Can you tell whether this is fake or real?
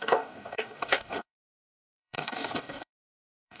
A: fake